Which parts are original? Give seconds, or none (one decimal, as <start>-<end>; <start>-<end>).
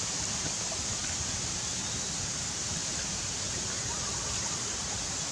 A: 1.0-1.9